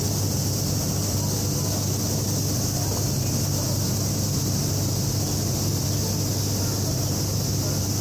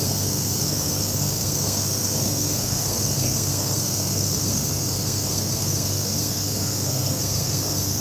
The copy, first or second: second